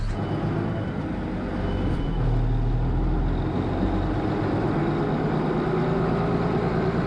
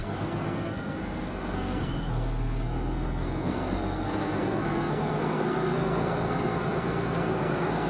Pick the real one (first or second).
first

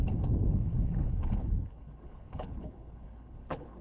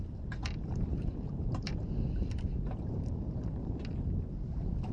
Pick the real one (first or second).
second